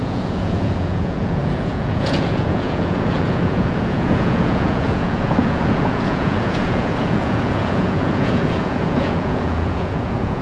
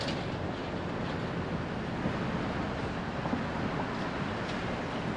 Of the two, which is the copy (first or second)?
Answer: first